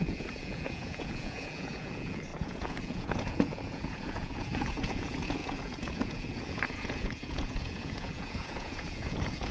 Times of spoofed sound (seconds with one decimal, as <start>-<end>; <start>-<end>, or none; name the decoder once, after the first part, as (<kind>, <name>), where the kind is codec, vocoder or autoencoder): 0.0-9.5 (vocoder, Vocos)